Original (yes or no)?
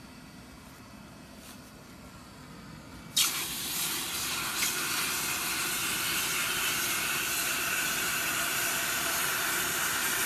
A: yes